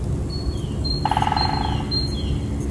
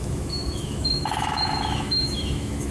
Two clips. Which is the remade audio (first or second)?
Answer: second